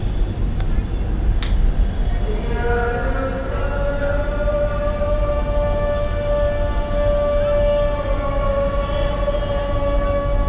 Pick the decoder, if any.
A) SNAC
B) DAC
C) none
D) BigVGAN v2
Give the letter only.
C